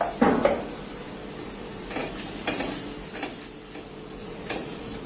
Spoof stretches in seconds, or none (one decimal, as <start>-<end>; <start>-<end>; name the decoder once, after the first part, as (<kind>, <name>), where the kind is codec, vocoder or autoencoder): 4.2-5.1 (vocoder, Vocos)